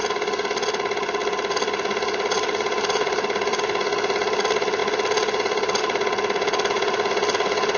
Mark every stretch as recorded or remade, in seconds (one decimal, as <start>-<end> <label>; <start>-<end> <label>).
0.0-7.8 recorded